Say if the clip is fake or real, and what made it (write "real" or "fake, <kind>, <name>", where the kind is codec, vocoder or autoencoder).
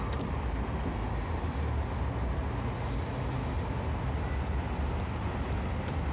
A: real